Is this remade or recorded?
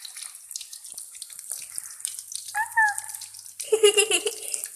recorded